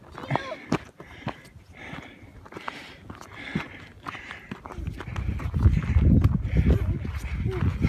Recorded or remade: recorded